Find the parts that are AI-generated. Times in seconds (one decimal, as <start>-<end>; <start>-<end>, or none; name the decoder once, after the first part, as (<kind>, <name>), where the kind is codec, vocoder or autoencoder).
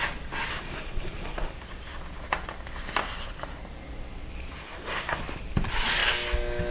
0.5-1.5 (codec, SNAC); 4.6-5.2